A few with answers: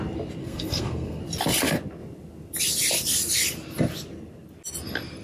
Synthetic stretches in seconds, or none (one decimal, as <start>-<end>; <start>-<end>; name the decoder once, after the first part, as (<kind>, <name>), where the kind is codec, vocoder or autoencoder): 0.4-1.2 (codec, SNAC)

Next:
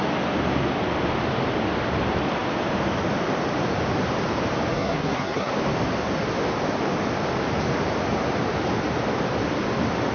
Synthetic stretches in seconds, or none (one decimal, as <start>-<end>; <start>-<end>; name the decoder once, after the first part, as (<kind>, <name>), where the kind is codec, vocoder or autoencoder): 4.7-5.5 (codec, SNAC)

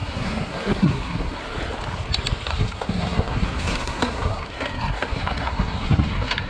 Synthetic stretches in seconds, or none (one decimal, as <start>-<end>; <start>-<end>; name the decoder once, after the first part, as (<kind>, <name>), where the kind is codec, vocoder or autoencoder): 0.0-1.4 (codec, SNAC); 2.5-6.5